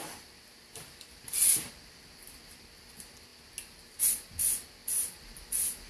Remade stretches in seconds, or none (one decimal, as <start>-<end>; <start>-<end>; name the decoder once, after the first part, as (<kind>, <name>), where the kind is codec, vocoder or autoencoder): none